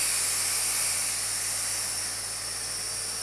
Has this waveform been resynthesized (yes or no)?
no